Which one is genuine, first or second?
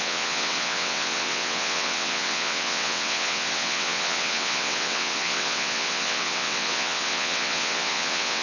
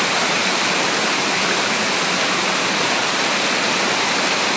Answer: second